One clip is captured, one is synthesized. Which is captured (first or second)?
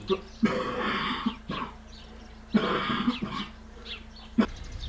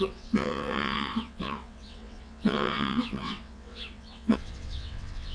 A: first